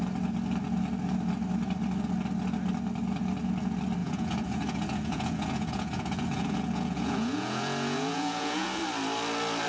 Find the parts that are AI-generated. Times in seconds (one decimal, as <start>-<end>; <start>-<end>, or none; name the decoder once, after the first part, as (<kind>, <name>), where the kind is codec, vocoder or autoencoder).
4.0-8.8 (vocoder, Vocos)